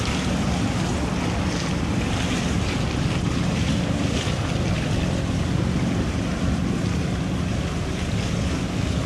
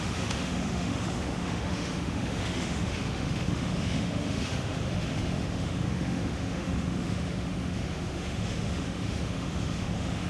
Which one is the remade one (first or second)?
second